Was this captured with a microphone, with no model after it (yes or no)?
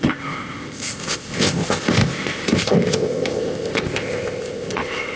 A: no